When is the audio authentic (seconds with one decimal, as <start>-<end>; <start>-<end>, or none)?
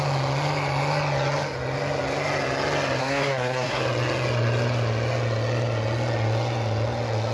0.0-3.0; 3.8-7.3